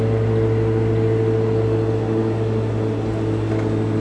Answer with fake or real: real